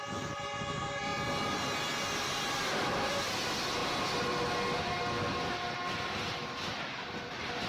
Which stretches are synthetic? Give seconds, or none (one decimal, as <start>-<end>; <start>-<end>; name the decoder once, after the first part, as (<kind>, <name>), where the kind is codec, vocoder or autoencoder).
none